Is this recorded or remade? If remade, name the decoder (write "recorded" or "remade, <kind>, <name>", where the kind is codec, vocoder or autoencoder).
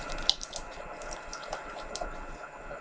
remade, vocoder, BigVGAN v2